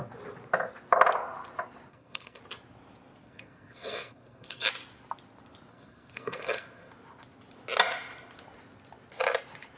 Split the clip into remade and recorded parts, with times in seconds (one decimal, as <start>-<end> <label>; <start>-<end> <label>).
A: 0.0-1.9 recorded; 1.9-2.4 remade; 2.4-3.2 recorded; 3.2-4.7 remade; 4.7-5.7 recorded; 5.7-6.9 remade; 6.9-9.8 recorded